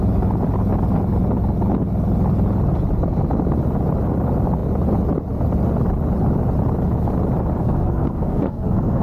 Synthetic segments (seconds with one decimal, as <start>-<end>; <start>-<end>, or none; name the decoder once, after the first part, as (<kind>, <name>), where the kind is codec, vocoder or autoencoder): 7.6-9.0 (codec, SNAC)